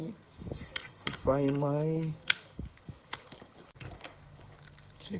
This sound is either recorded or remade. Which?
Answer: remade